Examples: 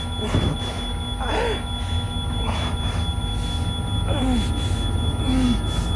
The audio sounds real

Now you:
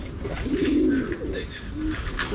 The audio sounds real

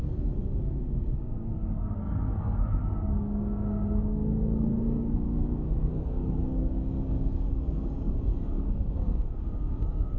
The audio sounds fake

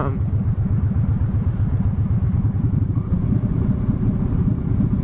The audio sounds real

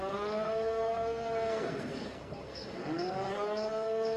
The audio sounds fake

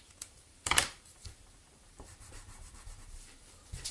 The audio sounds fake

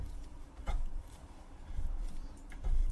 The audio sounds fake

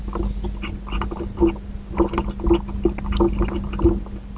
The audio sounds real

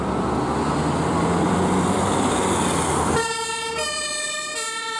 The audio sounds fake